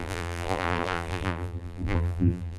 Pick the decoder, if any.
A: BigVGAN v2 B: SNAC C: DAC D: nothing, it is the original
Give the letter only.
A